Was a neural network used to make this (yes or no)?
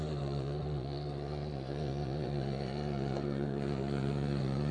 yes